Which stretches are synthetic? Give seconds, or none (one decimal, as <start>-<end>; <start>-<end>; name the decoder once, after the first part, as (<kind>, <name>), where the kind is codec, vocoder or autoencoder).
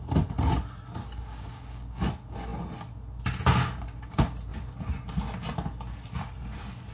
1.0-2.0 (codec, DAC)